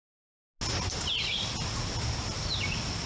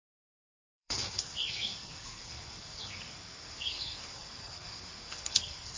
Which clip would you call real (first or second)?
first